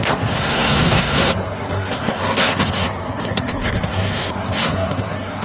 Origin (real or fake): fake